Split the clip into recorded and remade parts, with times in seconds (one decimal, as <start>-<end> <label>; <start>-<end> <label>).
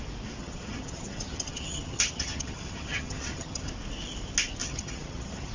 0.0-0.4 recorded; 0.4-3.7 remade; 3.7-4.6 recorded; 4.6-5.5 remade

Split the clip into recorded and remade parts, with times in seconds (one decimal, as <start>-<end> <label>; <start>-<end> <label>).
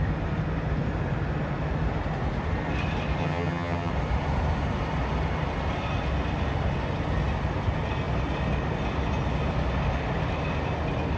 0.0-3.2 recorded; 3.2-3.9 remade; 3.9-11.2 recorded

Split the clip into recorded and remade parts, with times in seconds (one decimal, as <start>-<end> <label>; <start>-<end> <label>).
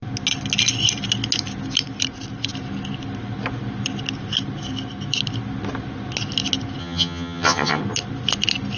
0.0-6.8 recorded; 6.8-7.8 remade; 7.8-8.8 recorded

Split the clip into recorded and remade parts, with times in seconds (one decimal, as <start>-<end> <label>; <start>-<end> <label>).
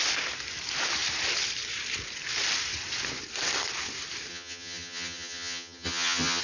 0.0-4.3 recorded; 4.3-6.4 remade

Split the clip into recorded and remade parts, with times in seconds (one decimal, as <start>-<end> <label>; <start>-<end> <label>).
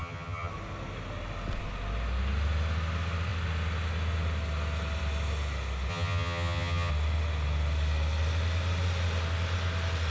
0.0-0.5 remade; 0.5-5.9 recorded; 5.9-6.9 remade; 6.9-10.1 recorded